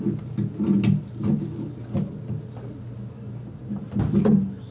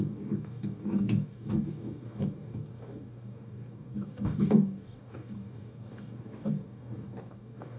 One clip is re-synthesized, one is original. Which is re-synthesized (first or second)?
second